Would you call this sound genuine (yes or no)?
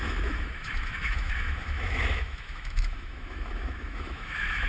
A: no